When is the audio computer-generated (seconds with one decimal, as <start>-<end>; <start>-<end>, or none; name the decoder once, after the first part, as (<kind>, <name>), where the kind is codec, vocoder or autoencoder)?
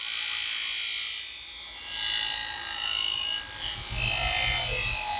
none